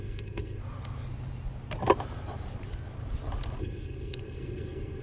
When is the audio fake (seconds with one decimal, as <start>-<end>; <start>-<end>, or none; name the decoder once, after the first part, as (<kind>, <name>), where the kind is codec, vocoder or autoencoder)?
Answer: 0.0-0.6 (codec, SNAC); 3.6-5.0